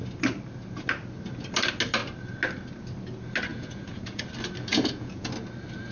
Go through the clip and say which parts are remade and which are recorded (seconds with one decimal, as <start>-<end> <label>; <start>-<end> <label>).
0.0-3.5 recorded; 3.5-4.2 remade; 4.2-4.7 recorded; 4.7-5.3 remade; 5.3-5.9 recorded